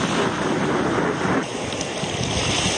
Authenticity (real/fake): real